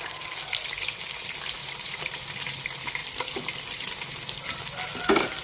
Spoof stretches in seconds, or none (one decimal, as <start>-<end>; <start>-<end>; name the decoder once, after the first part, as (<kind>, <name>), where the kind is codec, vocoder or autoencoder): 1.6-2.2 (vocoder, BigVGAN v2)